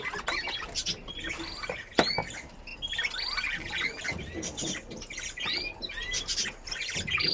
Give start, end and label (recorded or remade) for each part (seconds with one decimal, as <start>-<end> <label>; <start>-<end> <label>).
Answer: 0.0-7.3 recorded